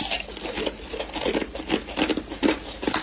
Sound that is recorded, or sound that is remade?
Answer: recorded